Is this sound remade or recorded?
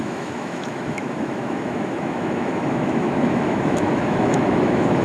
remade